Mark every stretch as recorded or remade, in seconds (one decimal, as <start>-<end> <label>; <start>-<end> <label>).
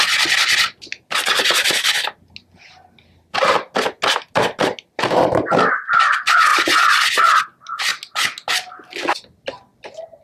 0.0-10.2 recorded